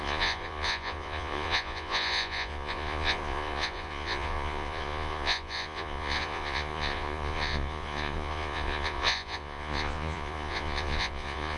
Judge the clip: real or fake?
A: fake